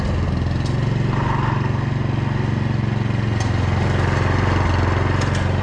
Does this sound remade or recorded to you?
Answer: recorded